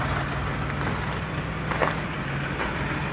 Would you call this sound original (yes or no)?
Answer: yes